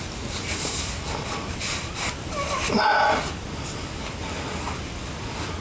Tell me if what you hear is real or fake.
real